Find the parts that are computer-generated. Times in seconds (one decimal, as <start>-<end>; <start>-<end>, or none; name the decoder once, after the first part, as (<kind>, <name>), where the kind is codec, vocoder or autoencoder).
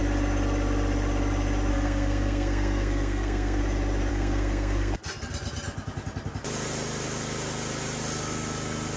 1.7-3.6 (codec, SNAC); 4.1-5.0